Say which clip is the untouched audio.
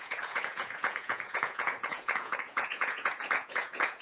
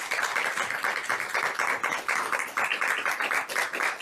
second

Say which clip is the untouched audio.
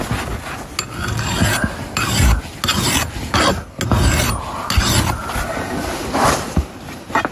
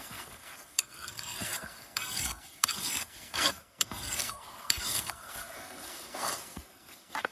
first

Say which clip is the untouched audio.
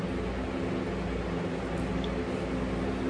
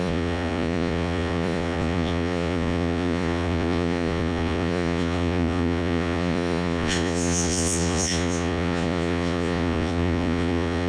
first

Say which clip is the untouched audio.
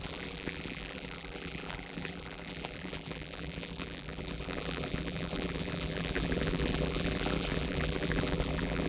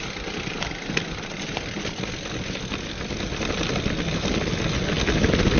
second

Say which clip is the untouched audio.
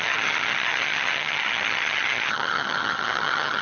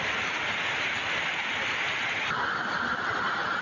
second